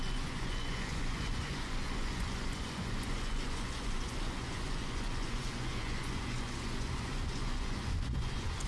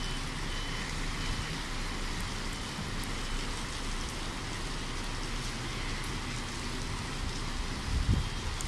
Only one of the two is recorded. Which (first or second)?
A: second